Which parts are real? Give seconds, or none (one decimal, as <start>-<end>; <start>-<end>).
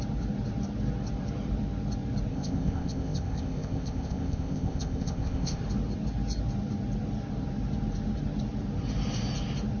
0.0-2.3; 5.6-9.8